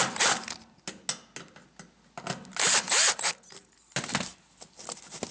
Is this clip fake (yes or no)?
no